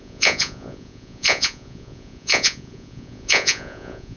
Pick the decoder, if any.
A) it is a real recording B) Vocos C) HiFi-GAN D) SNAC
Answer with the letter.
B